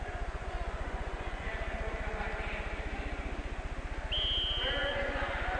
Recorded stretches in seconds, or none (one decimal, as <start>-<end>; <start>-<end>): 1.5-4.9